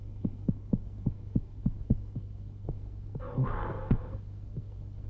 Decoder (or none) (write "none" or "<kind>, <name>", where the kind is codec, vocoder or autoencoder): codec, SNAC